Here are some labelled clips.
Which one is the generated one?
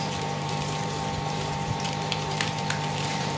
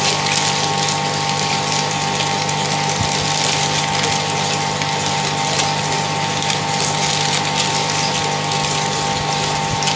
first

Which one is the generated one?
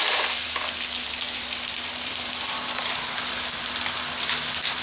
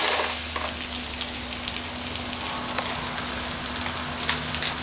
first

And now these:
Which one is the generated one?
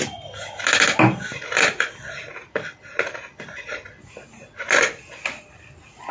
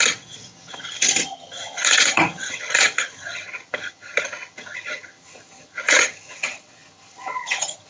second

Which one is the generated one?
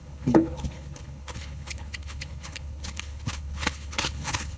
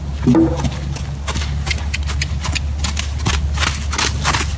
first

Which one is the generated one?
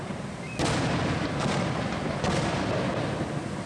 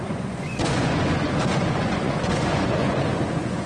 second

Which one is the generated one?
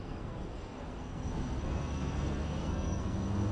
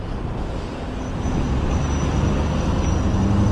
first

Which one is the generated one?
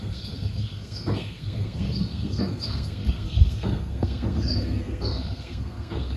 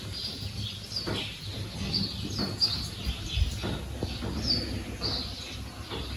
first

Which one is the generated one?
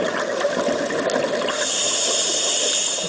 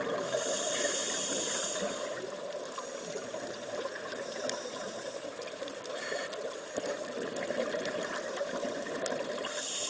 second